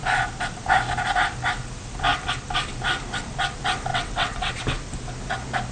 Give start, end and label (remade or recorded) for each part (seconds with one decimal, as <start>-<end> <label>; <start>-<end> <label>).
0.0-3.9 recorded; 3.9-4.5 remade; 4.5-5.7 recorded